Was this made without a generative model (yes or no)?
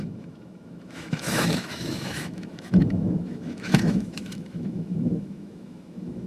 no